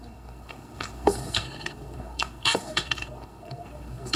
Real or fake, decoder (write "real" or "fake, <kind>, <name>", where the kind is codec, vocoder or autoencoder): fake, codec, SNAC